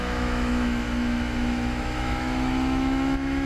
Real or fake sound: fake